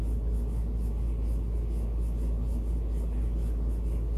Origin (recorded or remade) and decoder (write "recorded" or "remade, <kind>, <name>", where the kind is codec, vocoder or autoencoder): recorded